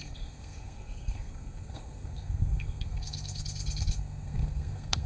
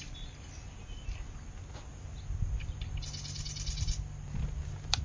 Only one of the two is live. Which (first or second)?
second